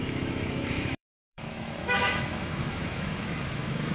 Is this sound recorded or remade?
remade